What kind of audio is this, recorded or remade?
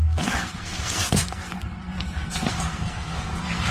remade